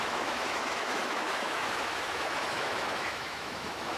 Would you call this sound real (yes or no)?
no